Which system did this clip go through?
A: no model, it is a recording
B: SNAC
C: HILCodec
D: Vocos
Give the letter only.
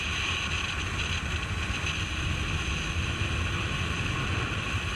A